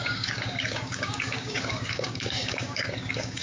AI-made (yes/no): yes